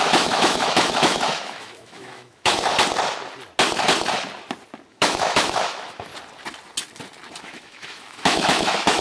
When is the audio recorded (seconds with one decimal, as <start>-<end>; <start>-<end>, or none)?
2.7-4.9; 6.1-7.4